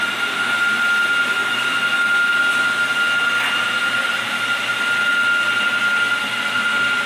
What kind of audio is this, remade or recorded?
recorded